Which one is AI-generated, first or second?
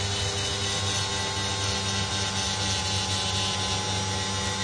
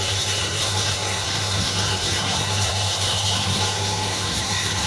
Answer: second